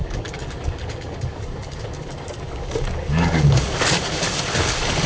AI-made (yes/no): yes